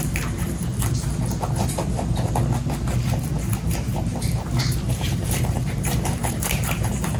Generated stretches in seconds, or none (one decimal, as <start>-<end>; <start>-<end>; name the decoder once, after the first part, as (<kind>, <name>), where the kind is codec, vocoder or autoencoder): 0.0-0.7 (vocoder, BigVGAN v2); 3.7-7.2